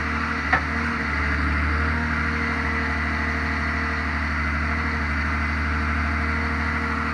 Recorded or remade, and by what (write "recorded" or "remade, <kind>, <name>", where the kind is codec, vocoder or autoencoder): recorded